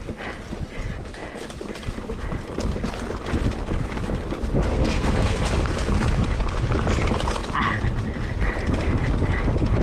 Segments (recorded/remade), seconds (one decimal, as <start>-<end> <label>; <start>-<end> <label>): 0.0-4.7 recorded; 4.7-5.5 remade; 5.5-9.8 recorded